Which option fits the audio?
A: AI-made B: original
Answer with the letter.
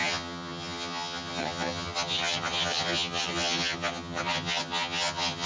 A